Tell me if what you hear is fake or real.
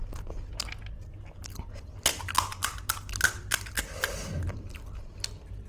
real